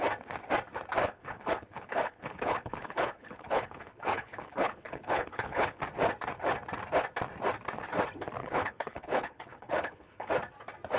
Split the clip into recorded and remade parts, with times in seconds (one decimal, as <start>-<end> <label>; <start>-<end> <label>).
0.0-1.0 recorded; 1.0-5.8 remade; 5.8-8.4 recorded; 8.4-10.3 remade; 10.3-11.0 recorded